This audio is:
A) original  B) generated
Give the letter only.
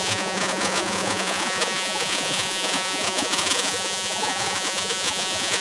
B